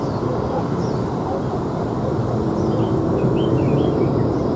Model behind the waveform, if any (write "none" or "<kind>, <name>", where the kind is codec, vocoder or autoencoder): none